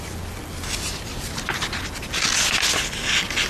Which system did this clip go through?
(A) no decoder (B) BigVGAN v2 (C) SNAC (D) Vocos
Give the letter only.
A